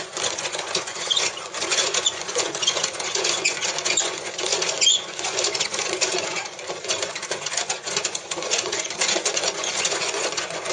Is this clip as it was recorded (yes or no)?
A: no